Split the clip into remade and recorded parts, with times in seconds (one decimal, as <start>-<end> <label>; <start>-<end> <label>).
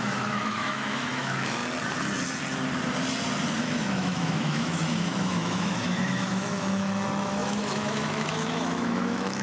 0.0-1.6 remade; 1.6-3.6 recorded; 3.6-9.4 remade